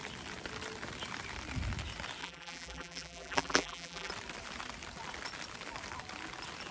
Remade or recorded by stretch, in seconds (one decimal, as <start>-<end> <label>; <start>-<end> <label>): 0.0-2.2 recorded; 2.2-4.1 remade; 4.1-6.7 recorded